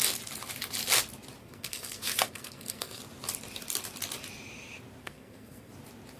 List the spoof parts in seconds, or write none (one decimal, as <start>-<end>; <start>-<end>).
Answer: 1.4-3.0; 5.0-5.7